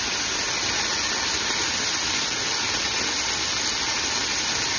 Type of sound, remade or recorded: recorded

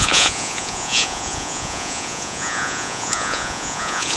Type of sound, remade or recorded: remade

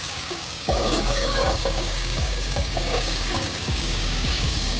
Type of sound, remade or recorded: remade